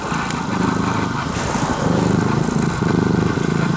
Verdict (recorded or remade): recorded